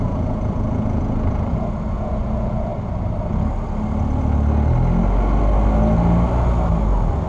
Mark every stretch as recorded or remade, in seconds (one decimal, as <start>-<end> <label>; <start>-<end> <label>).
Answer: 0.0-2.7 remade; 2.7-7.3 recorded